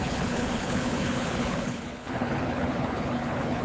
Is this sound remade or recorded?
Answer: remade